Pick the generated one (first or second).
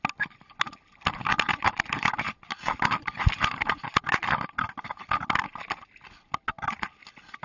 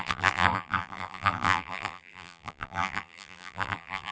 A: second